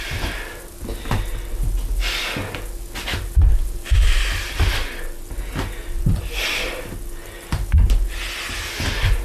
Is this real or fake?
real